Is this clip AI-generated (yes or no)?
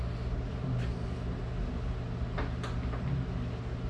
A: no